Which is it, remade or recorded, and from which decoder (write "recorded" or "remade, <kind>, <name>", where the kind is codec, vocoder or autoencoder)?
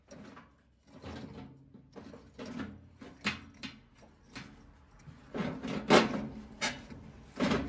recorded